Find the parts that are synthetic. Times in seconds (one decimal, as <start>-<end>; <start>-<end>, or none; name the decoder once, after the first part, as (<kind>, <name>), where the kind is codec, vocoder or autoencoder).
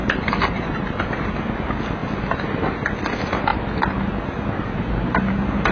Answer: 0.0-1.3 (vocoder, BigVGAN v2)